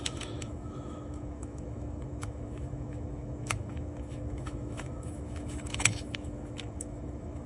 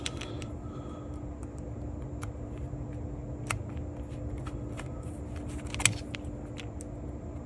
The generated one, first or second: first